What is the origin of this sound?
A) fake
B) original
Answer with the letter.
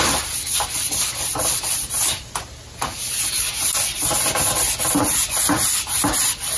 B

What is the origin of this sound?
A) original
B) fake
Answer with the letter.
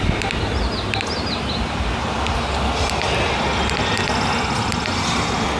A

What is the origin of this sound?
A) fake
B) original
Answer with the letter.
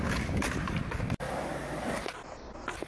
B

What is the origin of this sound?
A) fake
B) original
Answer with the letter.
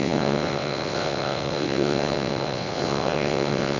A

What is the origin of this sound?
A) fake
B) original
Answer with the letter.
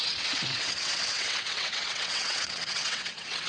A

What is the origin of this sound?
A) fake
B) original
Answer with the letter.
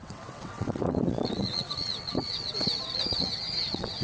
A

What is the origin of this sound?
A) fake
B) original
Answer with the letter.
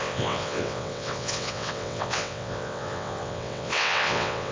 A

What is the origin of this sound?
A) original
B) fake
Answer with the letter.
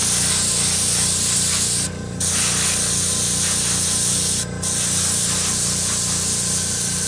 A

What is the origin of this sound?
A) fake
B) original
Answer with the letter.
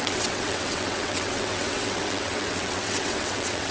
A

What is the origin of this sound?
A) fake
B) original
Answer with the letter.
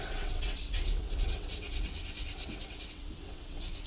A